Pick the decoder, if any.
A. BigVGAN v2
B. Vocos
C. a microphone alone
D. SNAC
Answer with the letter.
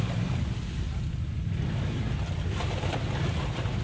C